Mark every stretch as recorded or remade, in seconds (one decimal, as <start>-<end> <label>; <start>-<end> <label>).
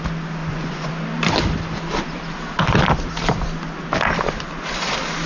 0.0-0.4 recorded; 0.4-0.9 remade; 0.9-5.3 recorded